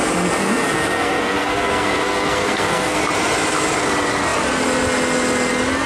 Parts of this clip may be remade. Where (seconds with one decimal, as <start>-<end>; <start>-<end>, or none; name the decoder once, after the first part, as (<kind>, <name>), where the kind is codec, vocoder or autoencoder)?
0.4-3.0 (codec, SNAC)